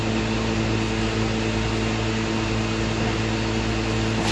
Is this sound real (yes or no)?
yes